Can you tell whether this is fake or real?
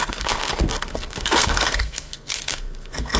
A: fake